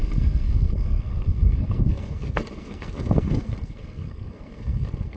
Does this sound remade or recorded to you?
remade